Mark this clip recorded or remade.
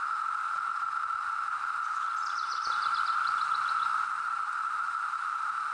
recorded